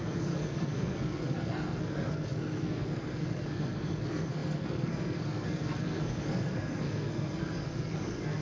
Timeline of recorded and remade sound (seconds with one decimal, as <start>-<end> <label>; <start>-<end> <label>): 0.0-8.4 remade